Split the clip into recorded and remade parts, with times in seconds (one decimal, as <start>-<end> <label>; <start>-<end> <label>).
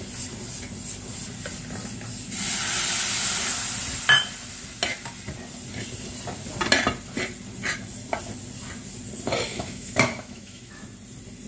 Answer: 0.0-9.5 recorded; 9.5-10.8 remade; 10.8-11.5 recorded